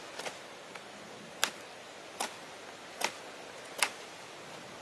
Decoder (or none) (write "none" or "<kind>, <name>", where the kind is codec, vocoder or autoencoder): none